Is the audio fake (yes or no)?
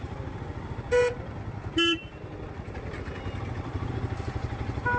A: no